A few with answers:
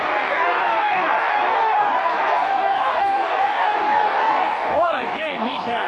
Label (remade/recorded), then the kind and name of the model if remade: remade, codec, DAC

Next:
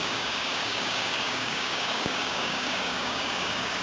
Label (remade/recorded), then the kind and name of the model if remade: remade, codec, DAC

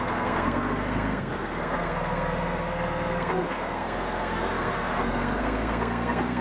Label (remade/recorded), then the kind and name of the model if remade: remade, codec, SNAC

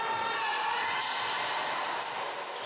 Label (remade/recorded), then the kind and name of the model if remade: recorded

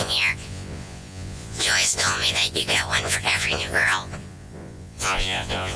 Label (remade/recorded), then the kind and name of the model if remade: remade, vocoder, Vocos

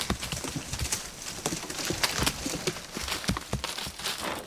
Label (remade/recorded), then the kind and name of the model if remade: recorded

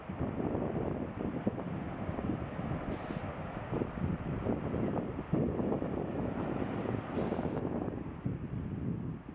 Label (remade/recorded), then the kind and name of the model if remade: recorded